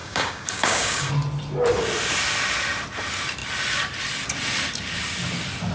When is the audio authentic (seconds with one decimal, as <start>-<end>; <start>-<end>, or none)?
1.1-5.7